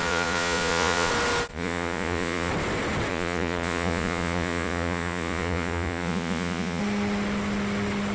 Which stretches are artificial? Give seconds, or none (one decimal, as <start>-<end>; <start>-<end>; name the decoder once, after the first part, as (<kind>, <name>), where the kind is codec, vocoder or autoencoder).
0.0-1.1 (vocoder, Vocos); 1.5-2.5; 3.1-6.8